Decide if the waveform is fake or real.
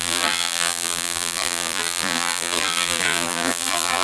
fake